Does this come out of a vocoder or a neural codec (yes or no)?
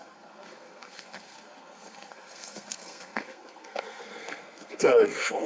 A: yes